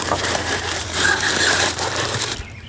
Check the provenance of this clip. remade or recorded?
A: remade